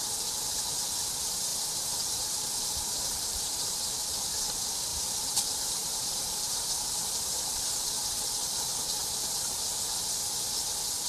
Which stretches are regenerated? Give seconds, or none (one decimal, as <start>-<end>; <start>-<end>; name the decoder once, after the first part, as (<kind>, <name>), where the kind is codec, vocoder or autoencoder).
1.5-3.7 (vocoder, BigVGAN v2); 4.9-7.6